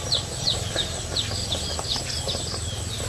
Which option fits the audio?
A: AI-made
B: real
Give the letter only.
B